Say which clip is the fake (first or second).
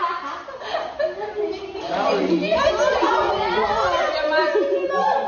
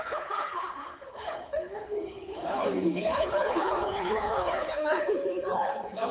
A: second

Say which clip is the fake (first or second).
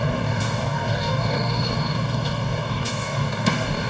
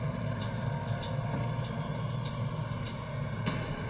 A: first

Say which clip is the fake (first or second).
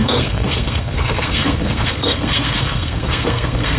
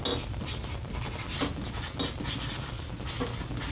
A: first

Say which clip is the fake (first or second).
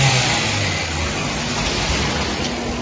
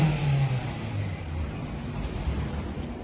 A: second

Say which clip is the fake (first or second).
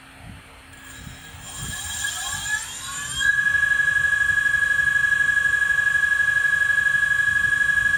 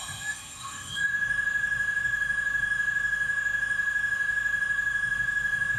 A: second